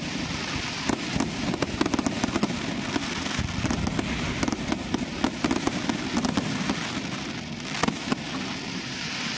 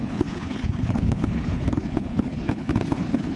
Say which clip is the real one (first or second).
first